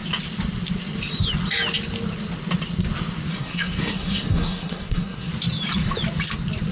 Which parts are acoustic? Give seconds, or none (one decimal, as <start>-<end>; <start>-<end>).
0.0-3.3; 5.3-6.7